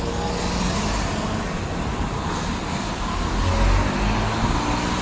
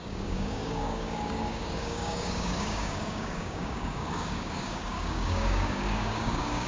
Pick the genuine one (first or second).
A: first